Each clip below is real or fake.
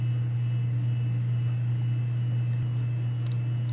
real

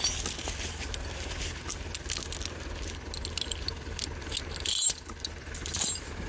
real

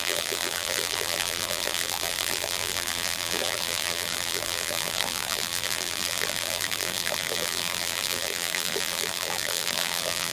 fake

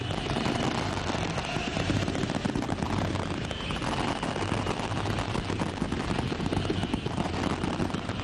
fake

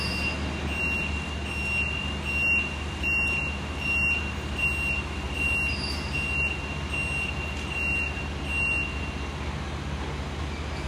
real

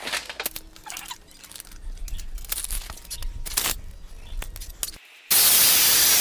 real